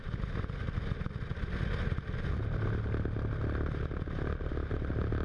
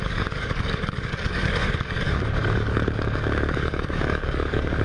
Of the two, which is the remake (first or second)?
second